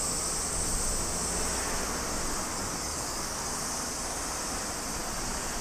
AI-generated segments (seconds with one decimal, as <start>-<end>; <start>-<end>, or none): 2.5-3.4

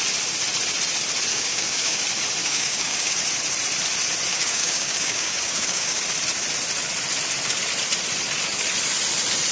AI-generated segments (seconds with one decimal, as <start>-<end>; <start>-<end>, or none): 1.3-2.0; 2.4-3.1; 4.3-6.0

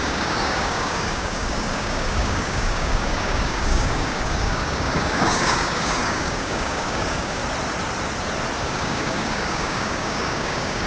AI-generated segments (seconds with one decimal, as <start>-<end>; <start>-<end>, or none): 0.0-7.4; 8.6-10.9